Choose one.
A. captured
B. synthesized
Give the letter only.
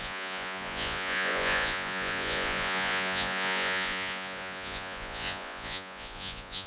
B